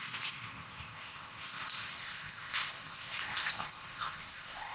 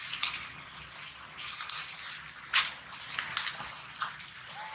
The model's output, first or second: first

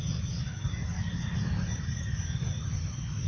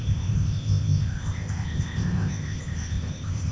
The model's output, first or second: second